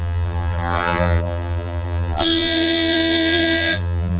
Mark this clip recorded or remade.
remade